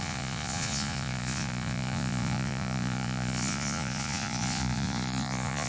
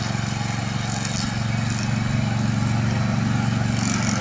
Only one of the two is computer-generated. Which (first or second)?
first